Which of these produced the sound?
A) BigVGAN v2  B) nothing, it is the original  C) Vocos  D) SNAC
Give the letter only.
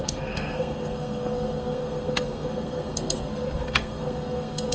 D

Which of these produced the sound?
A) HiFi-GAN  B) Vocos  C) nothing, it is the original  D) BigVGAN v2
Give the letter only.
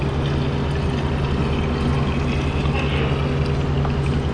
C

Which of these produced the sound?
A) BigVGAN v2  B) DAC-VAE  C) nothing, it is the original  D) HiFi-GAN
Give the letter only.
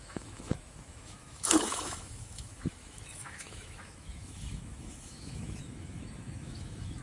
B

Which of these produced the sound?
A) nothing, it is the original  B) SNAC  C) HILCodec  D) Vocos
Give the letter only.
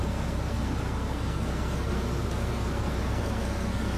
B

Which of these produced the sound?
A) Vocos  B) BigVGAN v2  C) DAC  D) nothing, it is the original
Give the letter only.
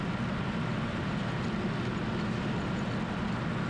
D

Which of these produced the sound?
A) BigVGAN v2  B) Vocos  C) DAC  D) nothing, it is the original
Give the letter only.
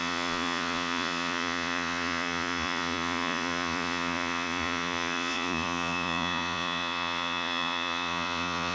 B